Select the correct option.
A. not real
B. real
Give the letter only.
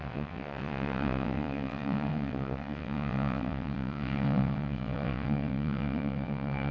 A